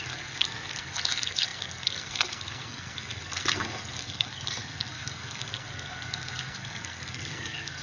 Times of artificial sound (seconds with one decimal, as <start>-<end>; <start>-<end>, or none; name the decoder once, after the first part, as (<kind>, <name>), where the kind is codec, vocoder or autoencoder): 0.0-7.8 (codec, SNAC)